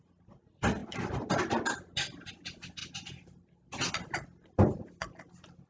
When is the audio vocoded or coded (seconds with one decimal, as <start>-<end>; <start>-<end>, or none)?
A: none